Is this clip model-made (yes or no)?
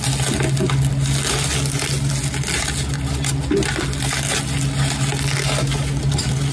no